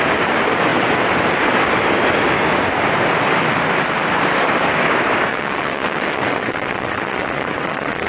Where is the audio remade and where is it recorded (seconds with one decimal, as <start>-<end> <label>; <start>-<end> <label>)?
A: 0.0-5.3 recorded; 5.3-8.1 remade